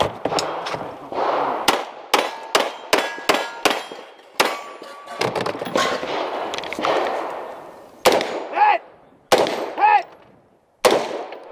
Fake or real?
real